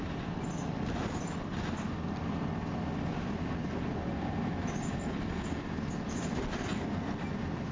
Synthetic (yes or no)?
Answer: no